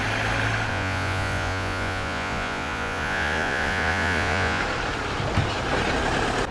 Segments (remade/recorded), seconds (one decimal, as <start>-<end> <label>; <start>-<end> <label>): 0.0-0.7 recorded; 0.7-4.6 remade; 4.6-6.5 recorded